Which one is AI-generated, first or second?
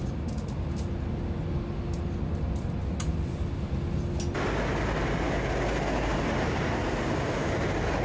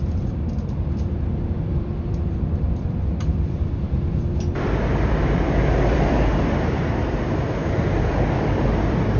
second